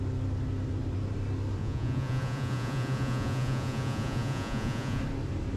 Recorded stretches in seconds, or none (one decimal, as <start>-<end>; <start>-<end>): 0.0-1.6; 5.0-5.6

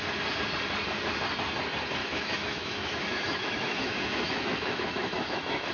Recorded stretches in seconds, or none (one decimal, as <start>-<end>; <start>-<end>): 0.0-2.0

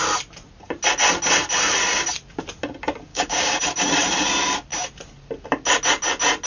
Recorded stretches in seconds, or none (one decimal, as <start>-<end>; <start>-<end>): 0.0-3.1; 3.6-6.5

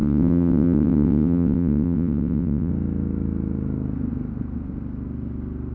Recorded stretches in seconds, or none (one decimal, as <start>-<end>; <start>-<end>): 2.7-5.7

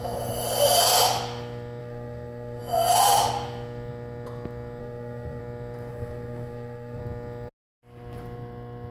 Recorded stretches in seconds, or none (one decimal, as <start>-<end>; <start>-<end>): 0.0-1.8; 2.6-4.8; 5.4-5.9; 7.0-8.9

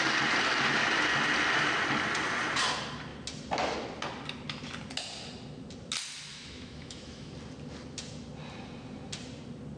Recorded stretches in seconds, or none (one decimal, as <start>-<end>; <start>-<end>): 0.0-6.3; 7.3-9.8

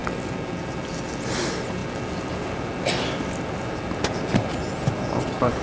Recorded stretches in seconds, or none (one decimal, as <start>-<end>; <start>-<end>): 0.0-5.6

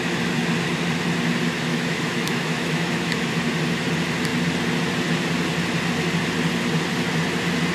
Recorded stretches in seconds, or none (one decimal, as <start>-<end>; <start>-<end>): 0.0-1.7; 3.3-7.7